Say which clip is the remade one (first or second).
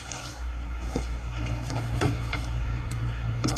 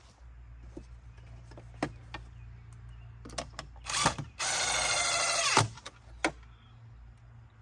first